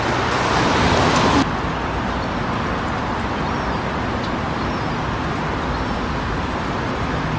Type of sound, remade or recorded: recorded